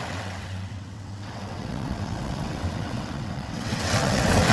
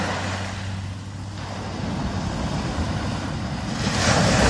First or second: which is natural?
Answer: second